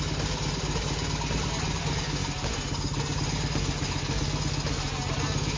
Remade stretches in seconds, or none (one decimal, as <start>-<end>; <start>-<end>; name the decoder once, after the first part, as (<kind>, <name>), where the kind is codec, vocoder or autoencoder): none